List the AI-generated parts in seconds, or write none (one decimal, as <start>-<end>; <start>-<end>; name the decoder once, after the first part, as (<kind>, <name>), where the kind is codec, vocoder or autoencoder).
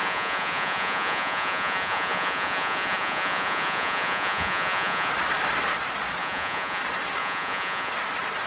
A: 0.0-5.1 (vocoder, Vocos); 6.2-6.8; 7.2-7.9